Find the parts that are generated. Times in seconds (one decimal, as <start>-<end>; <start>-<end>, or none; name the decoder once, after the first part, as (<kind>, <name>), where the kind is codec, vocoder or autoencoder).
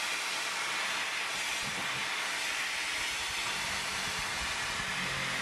none